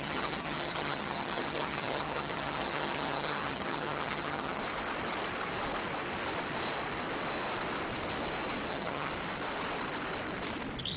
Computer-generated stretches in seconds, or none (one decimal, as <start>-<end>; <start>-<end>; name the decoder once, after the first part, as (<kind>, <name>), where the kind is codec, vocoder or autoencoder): 0.0-4.6 (vocoder, HiFi-GAN); 8.7-9.1

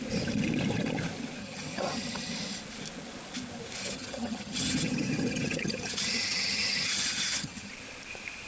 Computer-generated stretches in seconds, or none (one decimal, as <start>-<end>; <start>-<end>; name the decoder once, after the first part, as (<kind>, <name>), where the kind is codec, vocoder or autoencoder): 1.4-2.3 (vocoder, HiFi-GAN); 3.8-7.7

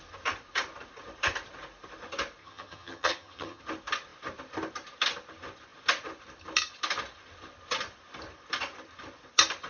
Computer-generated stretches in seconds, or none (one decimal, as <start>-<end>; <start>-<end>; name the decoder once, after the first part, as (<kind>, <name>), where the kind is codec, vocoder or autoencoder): 2.4-3.6 (vocoder, HiFi-GAN)

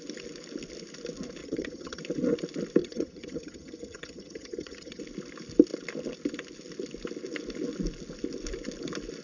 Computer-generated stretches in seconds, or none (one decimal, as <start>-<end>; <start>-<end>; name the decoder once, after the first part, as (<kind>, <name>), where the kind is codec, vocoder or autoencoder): 1.4-2.0 (vocoder, HiFi-GAN); 2.8-5.0

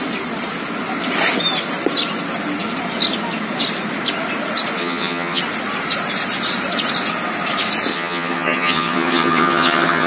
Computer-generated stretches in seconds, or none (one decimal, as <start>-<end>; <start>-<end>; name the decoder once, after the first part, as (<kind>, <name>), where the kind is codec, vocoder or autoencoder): 4.8-5.4 (vocoder, HiFi-GAN); 7.9-10.1

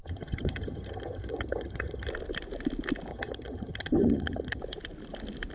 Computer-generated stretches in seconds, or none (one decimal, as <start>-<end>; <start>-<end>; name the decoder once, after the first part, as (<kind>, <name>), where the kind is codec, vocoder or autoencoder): 0.0-2.1 (vocoder, HiFi-GAN); 3.1-4.6

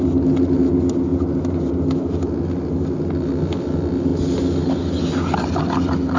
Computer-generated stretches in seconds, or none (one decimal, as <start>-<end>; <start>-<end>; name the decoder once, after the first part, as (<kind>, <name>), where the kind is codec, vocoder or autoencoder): none

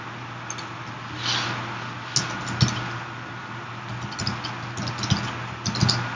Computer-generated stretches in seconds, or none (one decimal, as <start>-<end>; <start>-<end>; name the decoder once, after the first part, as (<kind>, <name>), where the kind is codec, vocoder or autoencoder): none